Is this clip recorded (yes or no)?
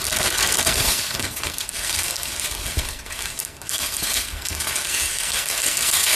no